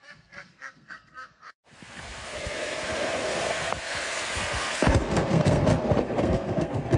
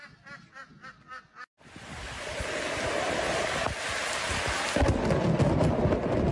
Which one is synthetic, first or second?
first